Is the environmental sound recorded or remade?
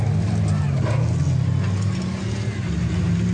recorded